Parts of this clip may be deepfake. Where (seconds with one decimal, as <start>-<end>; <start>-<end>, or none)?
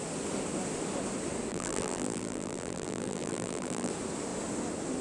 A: 1.5-3.9